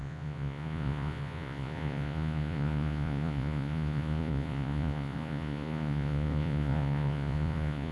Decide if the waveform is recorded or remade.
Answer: remade